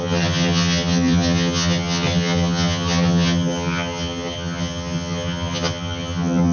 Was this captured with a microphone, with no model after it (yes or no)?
no